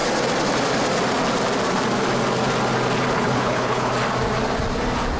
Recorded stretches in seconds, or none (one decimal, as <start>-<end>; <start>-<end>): 0.0-3.1; 3.9-5.2